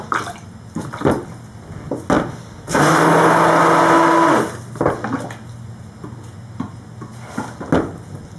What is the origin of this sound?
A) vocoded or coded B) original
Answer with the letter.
B